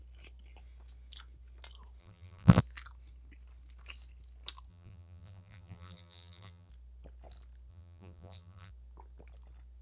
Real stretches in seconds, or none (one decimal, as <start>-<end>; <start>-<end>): 0.0-2.0; 2.6-4.7; 6.7-7.7; 8.7-9.8